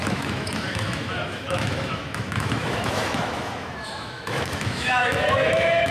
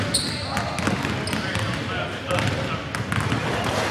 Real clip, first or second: second